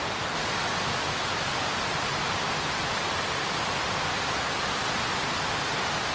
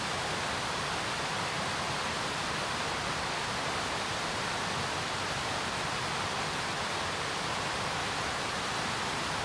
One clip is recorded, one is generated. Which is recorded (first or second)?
first